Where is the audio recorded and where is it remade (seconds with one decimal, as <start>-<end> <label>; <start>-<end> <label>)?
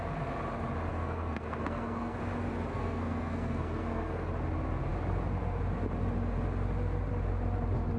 0.0-0.9 recorded; 0.9-2.2 remade; 2.2-2.7 recorded; 2.7-4.3 remade; 4.3-8.0 recorded